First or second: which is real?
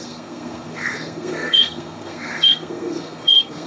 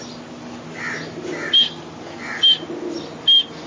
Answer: second